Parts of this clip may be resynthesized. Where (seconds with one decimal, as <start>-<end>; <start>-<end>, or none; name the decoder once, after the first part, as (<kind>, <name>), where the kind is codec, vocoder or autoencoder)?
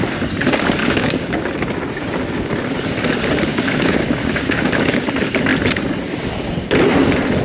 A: 0.8-1.4 (codec, DAC); 3.5-5.0